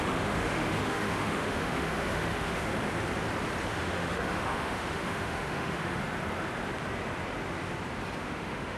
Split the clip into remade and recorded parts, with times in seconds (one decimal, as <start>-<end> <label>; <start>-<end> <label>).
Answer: 0.0-2.7 remade; 2.7-3.6 recorded; 3.6-6.0 remade; 6.0-8.2 recorded; 8.2-8.8 remade